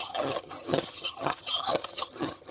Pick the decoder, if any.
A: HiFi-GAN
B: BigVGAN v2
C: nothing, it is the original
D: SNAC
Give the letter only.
A